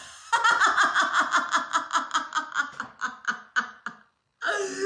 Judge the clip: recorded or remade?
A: recorded